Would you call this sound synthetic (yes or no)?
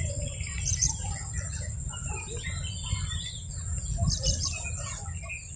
no